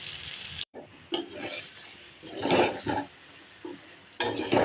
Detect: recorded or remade remade